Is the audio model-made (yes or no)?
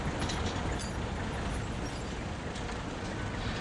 no